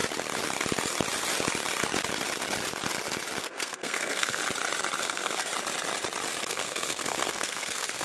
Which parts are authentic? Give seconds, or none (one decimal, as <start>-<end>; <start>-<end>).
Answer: 0.0-3.4; 4.4-5.0; 5.5-6.5